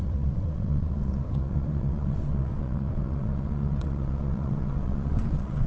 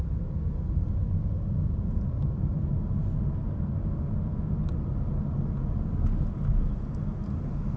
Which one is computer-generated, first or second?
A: first